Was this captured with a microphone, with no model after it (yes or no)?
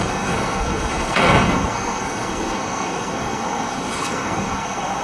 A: no